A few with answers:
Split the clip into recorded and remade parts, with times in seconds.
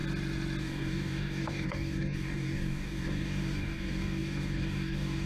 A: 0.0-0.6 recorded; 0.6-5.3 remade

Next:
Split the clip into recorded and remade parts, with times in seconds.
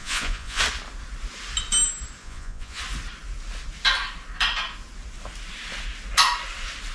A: 0.0-0.6 remade; 0.6-2.2 recorded; 2.2-2.8 remade; 2.8-6.9 recorded